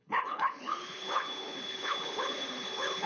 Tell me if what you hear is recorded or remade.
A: remade